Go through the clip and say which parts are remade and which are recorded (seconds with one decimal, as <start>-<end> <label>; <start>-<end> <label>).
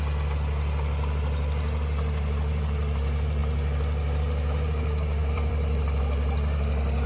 0.0-5.2 recorded; 5.2-6.0 remade; 6.0-7.1 recorded